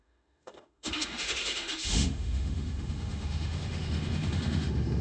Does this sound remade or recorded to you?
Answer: remade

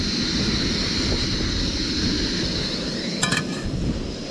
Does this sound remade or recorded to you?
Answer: recorded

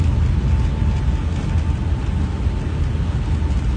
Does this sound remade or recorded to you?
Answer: recorded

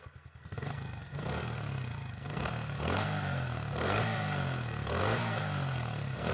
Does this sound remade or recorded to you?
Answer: remade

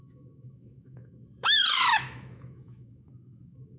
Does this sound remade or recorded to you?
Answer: remade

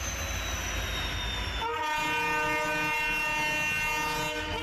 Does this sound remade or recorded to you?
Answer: recorded